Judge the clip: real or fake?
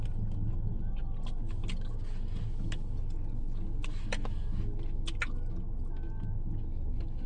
real